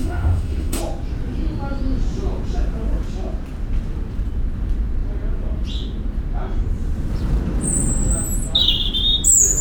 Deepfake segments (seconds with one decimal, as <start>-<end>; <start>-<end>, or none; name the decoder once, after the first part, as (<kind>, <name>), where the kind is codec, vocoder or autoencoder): 0.0-0.8 (autoencoder, DAC-VAE)